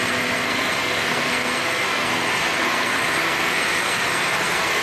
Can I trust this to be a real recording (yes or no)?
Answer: no